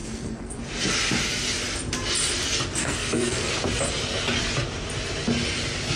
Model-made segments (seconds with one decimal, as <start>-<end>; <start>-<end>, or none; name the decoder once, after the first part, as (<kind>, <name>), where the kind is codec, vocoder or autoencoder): 0.0-0.6 (codec, SNAC); 2.8-3.5

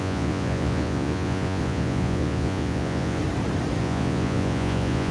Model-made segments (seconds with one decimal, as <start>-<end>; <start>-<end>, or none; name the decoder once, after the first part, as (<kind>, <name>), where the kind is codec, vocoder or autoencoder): 0.0-3.2 (vocoder, Vocos); 3.8-5.1

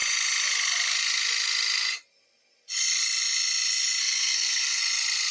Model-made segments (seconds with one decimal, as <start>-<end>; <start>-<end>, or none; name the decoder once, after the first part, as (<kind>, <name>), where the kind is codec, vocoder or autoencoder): 4.0-4.8 (codec, SNAC)

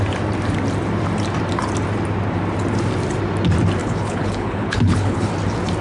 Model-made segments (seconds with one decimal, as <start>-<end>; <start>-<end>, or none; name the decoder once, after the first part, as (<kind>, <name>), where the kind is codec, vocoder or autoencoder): 3.8-5.3 (codec, HILCodec)

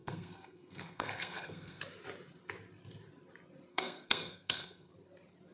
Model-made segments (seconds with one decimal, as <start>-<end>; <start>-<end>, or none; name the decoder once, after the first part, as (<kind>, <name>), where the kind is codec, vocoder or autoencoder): 0.0-1.8 (codec, SNAC); 3.7-4.9

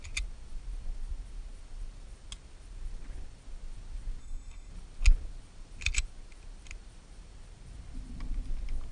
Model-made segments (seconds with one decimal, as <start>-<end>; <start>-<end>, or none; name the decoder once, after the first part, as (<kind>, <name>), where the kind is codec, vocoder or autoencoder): 4.2-4.7 (codec, SNAC)

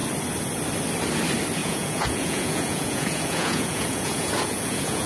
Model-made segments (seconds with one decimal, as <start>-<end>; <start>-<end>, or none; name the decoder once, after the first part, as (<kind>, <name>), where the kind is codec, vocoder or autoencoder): 1.6-5.1 (vocoder, Vocos)

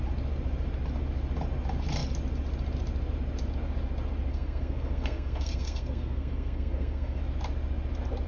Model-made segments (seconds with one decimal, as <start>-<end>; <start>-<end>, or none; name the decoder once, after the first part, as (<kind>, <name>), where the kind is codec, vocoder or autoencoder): 4.3-7.2 (codec, SNAC)